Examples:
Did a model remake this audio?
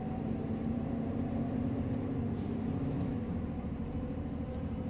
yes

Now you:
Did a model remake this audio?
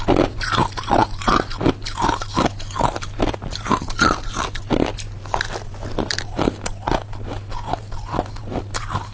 no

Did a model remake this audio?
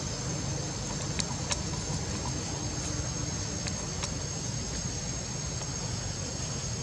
no